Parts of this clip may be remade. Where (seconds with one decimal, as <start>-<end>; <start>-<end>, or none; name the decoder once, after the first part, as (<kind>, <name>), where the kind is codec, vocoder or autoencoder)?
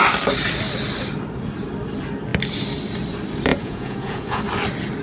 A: 3.5-4.4 (vocoder, Vocos)